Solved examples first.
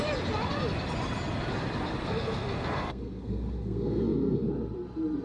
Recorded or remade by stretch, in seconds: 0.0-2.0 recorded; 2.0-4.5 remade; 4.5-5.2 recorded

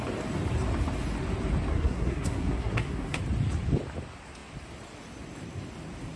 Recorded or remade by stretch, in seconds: 0.0-1.7 recorded; 1.7-3.2 remade; 3.2-6.2 recorded